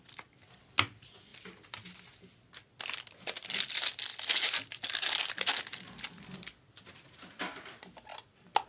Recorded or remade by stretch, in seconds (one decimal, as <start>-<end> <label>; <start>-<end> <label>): 0.0-8.7 recorded